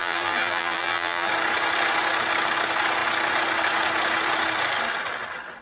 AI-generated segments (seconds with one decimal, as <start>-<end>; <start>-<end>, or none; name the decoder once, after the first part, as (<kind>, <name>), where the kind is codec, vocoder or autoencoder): 0.0-1.3 (vocoder, BigVGAN v2)